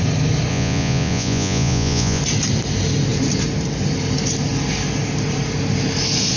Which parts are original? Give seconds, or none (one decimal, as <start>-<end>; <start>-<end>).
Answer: 0.0-0.5; 2.2-6.4